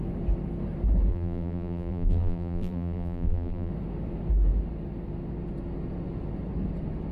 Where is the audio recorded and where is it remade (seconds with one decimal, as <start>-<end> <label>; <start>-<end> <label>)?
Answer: 0.0-1.1 recorded; 1.1-3.7 remade; 3.7-7.1 recorded

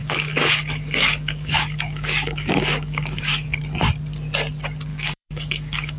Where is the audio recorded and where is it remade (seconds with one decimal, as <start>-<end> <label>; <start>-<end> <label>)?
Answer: 0.0-3.6 remade; 3.6-4.9 recorded; 4.9-6.0 remade

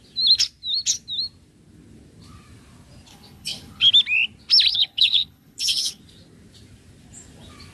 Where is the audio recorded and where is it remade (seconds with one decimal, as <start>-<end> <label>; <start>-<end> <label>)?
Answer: 0.0-3.1 recorded; 3.1-3.9 remade; 3.9-4.7 recorded; 4.7-6.0 remade; 6.0-7.7 recorded

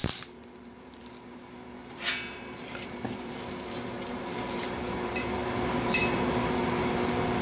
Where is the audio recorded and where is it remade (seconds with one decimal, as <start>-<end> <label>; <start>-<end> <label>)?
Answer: 0.0-7.4 remade